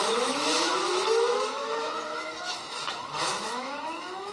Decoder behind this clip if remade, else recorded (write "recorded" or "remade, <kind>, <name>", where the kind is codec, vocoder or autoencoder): remade, autoencoder, DAC-VAE